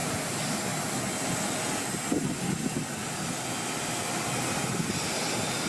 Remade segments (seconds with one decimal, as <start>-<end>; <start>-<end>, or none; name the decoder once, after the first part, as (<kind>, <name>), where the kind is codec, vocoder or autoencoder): none